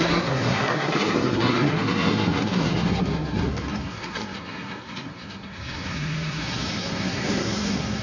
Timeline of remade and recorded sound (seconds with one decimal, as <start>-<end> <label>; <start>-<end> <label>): 0.0-8.0 remade